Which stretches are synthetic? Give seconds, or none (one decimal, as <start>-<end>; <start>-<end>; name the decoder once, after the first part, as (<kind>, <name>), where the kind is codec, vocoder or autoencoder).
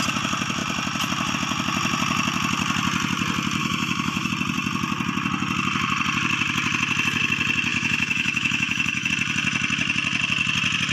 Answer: 3.6-4.3 (autoencoder, DAC-VAE); 7.7-9.1